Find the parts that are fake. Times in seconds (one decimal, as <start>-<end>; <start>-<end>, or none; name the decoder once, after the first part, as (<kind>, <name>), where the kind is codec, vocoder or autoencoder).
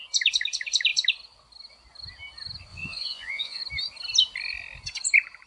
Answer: 2.7-3.6 (vocoder, Vocos)